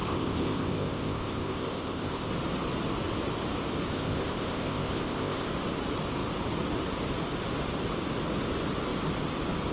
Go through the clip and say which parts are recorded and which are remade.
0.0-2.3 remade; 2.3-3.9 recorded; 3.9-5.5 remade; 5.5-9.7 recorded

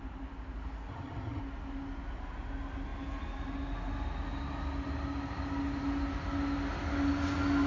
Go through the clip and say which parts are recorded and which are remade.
0.0-0.9 recorded; 0.9-1.4 remade; 1.4-7.7 recorded

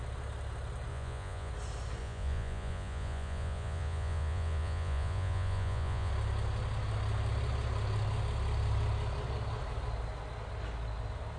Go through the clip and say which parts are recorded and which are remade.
0.0-0.9 recorded; 0.9-1.5 remade; 1.5-2.0 recorded; 2.0-6.1 remade; 6.1-11.4 recorded

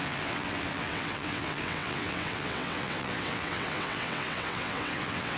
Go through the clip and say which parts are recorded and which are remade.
0.0-5.4 remade